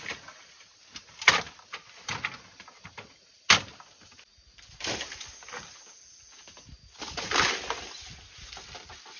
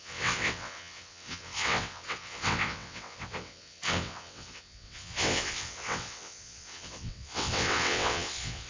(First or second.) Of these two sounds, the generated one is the second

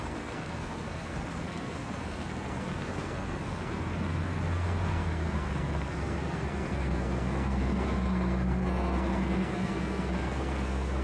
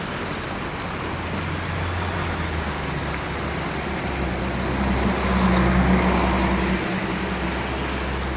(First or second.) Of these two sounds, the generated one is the first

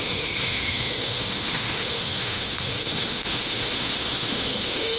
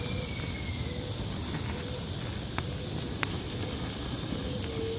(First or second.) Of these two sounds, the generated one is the first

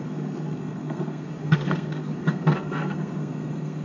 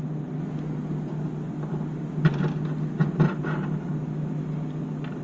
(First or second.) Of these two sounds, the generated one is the first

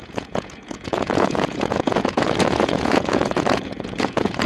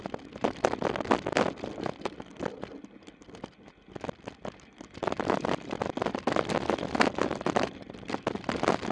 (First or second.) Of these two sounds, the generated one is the first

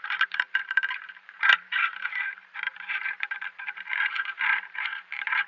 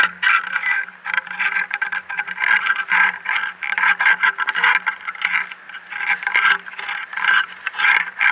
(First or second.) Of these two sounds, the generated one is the first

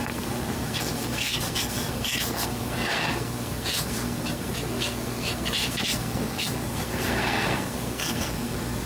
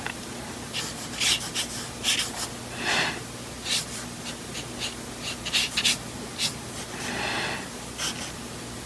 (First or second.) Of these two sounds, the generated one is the first